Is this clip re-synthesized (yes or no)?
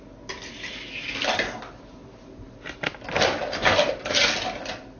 no